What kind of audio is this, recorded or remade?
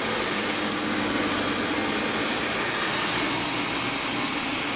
recorded